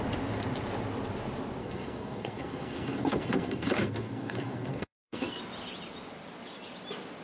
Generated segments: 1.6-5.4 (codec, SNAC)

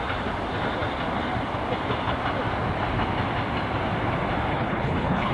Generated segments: 4.5-5.3 (codec, HILCodec)

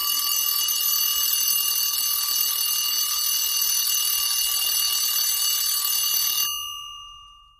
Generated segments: none

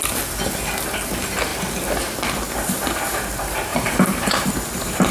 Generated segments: 3.7-5.1 (vocoder, BigVGAN v2)

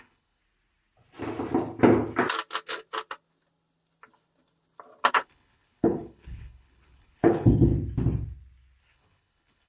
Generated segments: 0.0-0.4 (codec, HILCodec); 5.1-7.7; 8.8-9.7

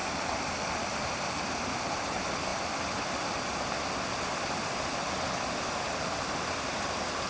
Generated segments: none

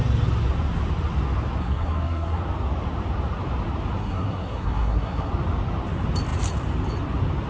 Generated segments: 1.6-2.4 (codec, SNAC); 4.0-5.3